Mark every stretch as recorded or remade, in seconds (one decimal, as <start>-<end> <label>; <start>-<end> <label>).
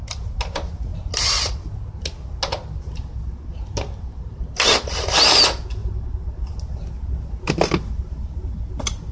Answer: 0.0-9.1 recorded